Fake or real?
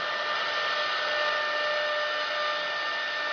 real